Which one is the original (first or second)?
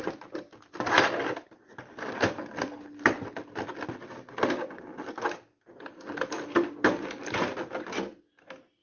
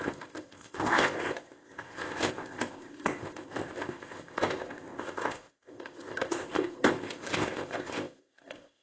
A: first